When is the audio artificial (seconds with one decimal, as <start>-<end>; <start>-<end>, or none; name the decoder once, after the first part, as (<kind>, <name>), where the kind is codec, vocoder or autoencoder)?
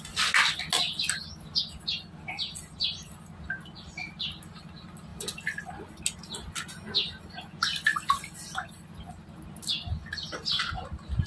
none